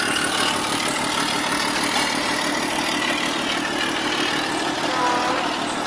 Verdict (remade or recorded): recorded